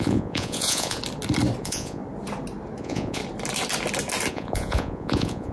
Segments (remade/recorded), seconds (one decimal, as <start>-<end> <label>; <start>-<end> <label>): 0.0-1.0 remade; 1.0-1.6 recorded; 1.6-2.0 remade; 2.0-2.8 recorded; 2.8-3.2 remade; 3.2-4.3 recorded; 4.3-5.5 remade

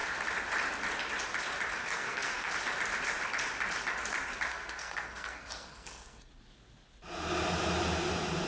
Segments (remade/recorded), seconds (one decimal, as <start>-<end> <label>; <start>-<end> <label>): 0.0-1.8 recorded; 1.8-2.5 remade; 2.5-4.5 recorded; 4.5-6.3 remade; 6.3-8.5 recorded

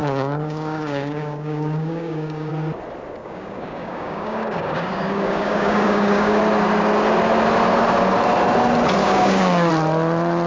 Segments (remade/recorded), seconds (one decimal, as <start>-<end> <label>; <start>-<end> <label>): 0.0-2.5 remade; 2.5-3.2 recorded; 3.2-6.4 remade; 6.4-9.0 recorded; 9.0-9.7 remade; 9.7-10.5 recorded

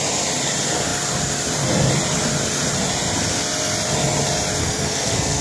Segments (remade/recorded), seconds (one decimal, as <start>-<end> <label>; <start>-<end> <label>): 0.0-4.6 recorded; 4.6-5.4 remade

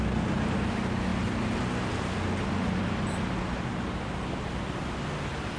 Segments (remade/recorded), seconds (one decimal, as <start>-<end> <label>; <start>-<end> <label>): 0.0-5.6 recorded